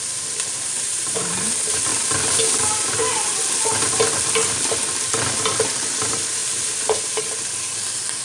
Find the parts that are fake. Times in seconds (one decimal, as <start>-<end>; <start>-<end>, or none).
0.0-1.9; 6.0-6.4; 7.0-8.2